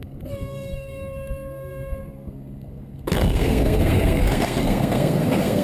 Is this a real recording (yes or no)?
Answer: no